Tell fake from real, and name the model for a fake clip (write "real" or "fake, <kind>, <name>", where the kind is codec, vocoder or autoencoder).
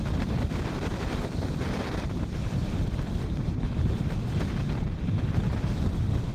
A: fake, vocoder, BigVGAN v2